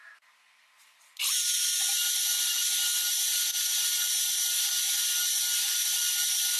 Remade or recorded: recorded